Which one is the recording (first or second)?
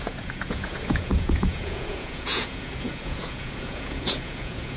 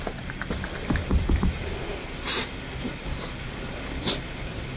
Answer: second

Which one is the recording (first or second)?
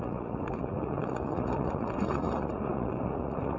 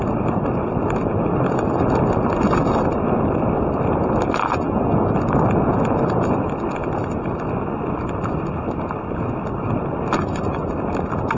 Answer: second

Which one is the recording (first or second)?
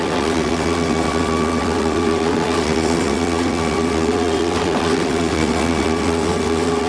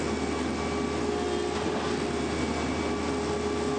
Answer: second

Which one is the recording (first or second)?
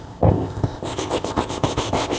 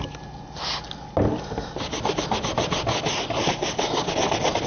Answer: second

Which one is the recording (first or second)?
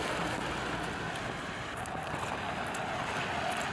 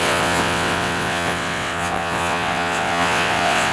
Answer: first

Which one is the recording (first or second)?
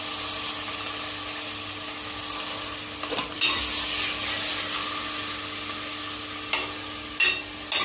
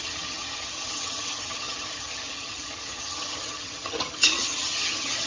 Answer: first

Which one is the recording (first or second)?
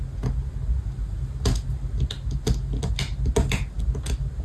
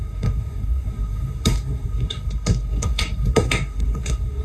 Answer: first